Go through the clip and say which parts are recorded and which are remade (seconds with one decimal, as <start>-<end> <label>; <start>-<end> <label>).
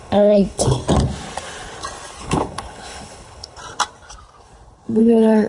0.0-0.8 remade; 0.8-2.2 recorded; 2.2-3.6 remade; 3.6-5.0 recorded; 5.0-5.5 remade